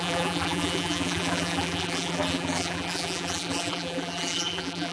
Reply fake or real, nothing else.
fake